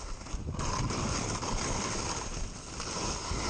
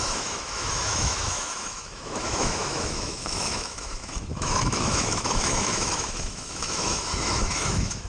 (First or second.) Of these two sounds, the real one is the first